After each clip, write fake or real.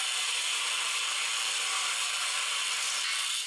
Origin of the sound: real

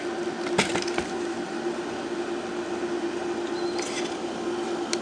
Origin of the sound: real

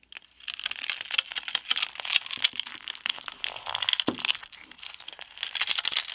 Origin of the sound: real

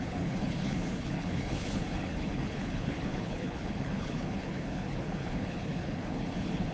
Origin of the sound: fake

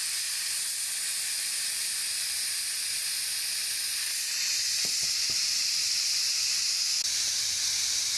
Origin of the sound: real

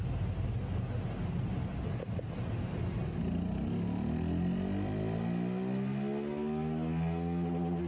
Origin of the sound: real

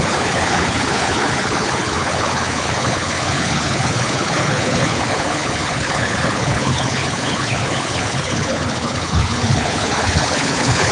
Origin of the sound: fake